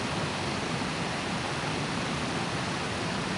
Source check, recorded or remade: recorded